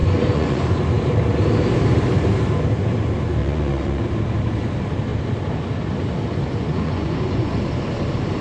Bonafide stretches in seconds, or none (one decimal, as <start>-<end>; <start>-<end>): 0.8-3.4; 4.0-6.7; 7.5-8.4